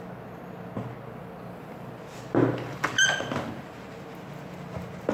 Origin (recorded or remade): recorded